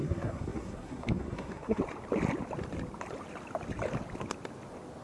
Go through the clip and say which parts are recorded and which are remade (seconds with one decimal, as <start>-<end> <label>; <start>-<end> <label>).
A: 0.0-1.8 remade; 1.8-5.0 recorded